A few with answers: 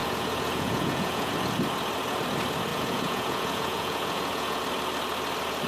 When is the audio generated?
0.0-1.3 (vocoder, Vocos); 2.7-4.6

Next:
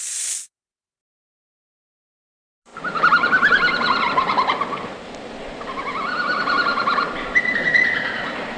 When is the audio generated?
0.0-8.6 (vocoder, BigVGAN v2)

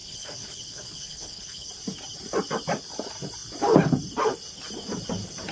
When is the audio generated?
0.0-1.7 (codec, HILCodec)

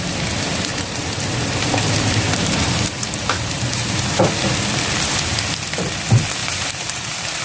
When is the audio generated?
0.7-4.3 (vocoder, BigVGAN v2); 6.4-7.4

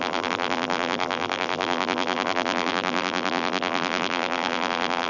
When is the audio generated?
0.0-5.1 (vocoder, BigVGAN v2)

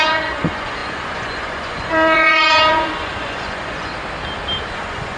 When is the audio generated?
0.0-3.9 (vocoder, Vocos); 4.7-5.2

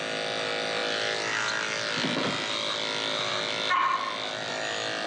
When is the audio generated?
none